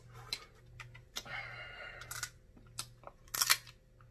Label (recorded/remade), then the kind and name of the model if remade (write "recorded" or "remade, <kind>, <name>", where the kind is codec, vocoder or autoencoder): recorded